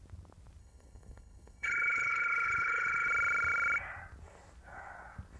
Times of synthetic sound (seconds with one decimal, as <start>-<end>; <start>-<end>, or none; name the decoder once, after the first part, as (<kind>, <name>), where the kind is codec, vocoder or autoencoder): 0.6-3.1 (codec, HILCodec)